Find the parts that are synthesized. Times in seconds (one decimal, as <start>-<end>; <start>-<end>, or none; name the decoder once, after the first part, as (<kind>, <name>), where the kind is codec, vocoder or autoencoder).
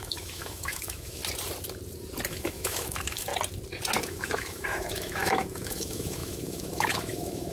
0.0-1.2 (autoencoder, DAC-VAE); 2.3-3.3; 4.0-7.5